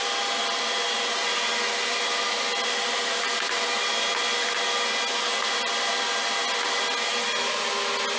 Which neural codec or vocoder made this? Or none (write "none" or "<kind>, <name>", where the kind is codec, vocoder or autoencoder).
none